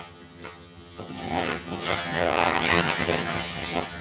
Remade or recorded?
remade